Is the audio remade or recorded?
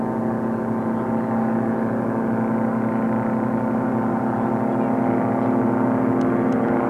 recorded